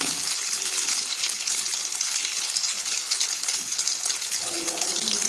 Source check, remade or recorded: remade